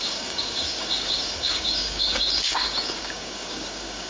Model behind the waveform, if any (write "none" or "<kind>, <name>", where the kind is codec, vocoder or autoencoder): codec, DAC